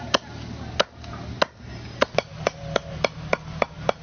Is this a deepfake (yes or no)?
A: no